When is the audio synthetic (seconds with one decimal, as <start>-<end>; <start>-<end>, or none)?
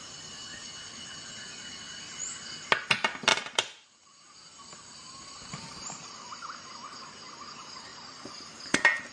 3.3-6.6; 7.9-9.1